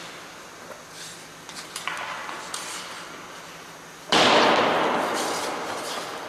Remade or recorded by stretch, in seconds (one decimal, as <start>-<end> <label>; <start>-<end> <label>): 0.0-6.3 recorded